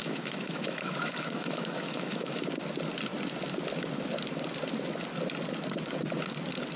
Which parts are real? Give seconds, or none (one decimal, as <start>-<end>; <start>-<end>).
2.4-6.8